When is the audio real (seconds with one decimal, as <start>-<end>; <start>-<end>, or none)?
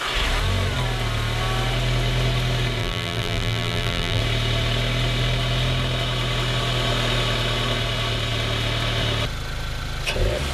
0.0-2.8; 4.2-10.5